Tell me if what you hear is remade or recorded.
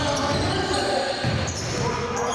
recorded